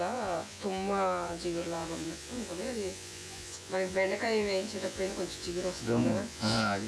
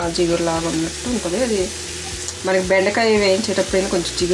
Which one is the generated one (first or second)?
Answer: first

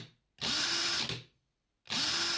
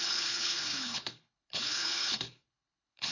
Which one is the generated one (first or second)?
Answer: second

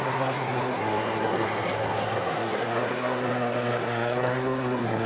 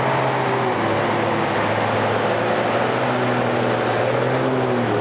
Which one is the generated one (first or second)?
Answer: first